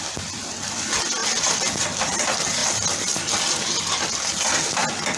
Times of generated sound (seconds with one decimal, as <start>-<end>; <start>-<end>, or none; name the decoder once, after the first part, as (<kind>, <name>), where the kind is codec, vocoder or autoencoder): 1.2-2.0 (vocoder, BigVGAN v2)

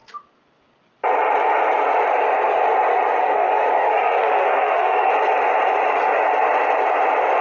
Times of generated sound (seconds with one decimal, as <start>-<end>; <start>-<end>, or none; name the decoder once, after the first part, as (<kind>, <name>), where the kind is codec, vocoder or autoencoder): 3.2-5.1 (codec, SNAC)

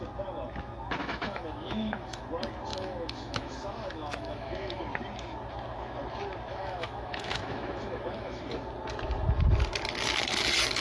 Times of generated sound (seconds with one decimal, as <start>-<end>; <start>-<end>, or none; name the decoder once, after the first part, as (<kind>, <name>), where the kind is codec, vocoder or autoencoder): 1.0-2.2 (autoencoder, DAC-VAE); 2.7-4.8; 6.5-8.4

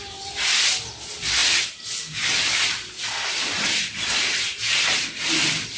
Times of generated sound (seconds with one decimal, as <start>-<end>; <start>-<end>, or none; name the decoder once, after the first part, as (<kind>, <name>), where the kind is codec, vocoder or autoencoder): none